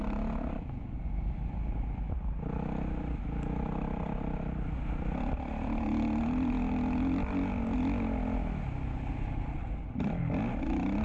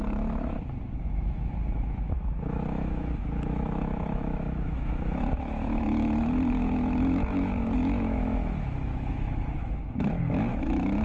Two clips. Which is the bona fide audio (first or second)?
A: first